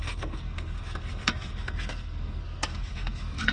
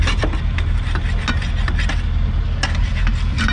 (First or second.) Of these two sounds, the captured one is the second